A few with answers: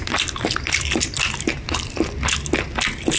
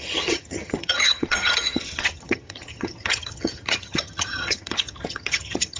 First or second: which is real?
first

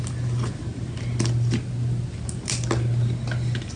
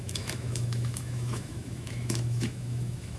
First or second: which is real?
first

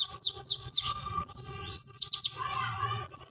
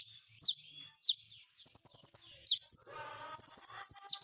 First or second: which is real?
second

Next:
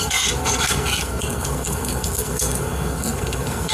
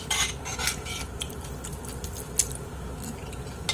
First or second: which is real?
second